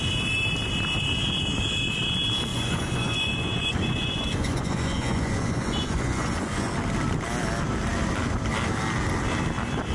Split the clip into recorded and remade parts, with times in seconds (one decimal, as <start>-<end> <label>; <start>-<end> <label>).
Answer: 0.0-2.5 recorded; 2.5-6.7 remade; 6.7-9.9 recorded